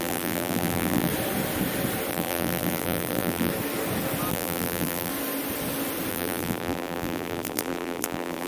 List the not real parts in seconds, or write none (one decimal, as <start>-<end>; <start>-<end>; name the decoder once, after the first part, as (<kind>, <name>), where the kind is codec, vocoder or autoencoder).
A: 0.0-1.1 (vocoder, BigVGAN v2); 2.1-3.5; 4.3-5.1; 6.1-8.5